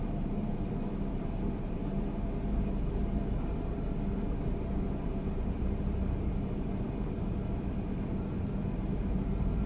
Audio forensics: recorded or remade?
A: remade